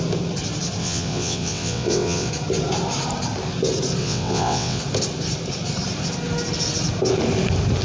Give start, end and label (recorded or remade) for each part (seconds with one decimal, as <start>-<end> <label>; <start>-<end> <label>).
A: 0.0-0.8 recorded; 0.8-2.3 remade; 2.3-4.0 recorded; 4.0-4.8 remade; 4.8-7.8 recorded